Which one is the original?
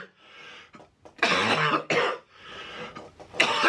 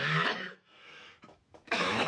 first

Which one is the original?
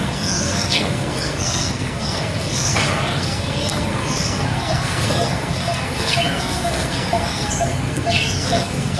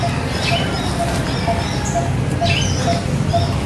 second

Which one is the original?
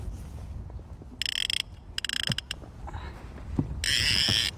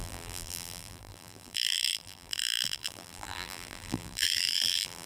first